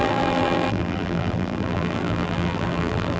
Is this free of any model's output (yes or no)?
no